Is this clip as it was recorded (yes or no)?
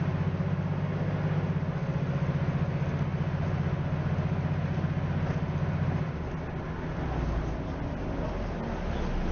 yes